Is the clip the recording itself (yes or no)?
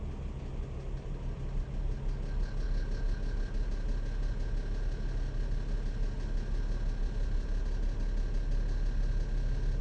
yes